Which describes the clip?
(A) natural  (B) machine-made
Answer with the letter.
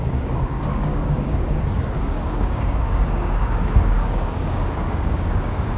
B